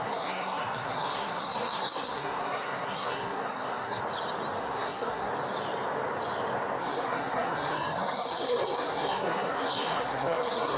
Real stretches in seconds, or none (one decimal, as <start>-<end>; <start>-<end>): 4.0-4.6; 5.3-6.8